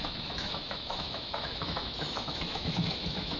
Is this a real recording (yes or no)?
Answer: no